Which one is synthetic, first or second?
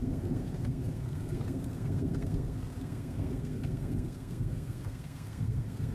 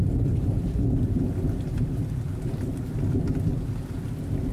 first